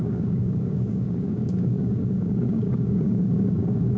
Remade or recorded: remade